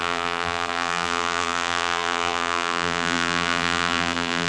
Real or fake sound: fake